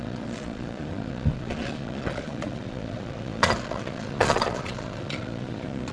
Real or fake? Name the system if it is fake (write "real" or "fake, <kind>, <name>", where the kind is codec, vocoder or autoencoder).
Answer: fake, vocoder, Vocos